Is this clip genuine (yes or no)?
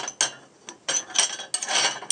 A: yes